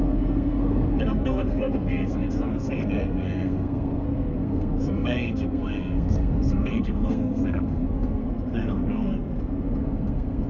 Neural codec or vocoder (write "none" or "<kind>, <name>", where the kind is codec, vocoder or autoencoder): codec, SNAC